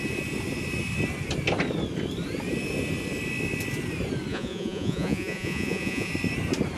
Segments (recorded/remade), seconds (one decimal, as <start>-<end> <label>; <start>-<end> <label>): 0.0-4.3 recorded; 4.3-6.1 remade; 6.1-6.8 recorded